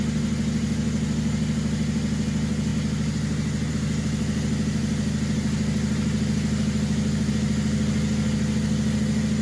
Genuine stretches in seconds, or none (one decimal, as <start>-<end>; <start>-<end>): 0.0-9.4